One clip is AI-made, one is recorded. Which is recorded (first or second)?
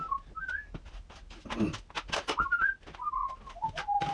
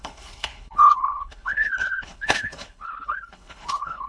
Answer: first